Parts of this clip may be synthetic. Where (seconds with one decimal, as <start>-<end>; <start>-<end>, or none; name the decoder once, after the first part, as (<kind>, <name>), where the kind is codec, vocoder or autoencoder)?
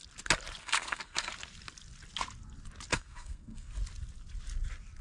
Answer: 0.6-1.3 (codec, SNAC); 2.9-3.7